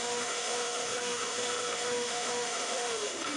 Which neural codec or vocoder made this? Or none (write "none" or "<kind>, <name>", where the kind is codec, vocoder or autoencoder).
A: autoencoder, DAC-VAE